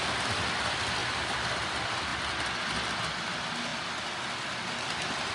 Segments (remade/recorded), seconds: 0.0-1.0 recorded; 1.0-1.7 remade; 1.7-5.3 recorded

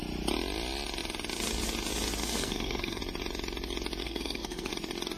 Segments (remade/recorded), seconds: 0.0-2.2 recorded; 2.2-3.0 remade; 3.0-4.0 recorded; 4.0-4.7 remade; 4.7-5.2 recorded